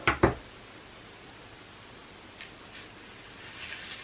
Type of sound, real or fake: real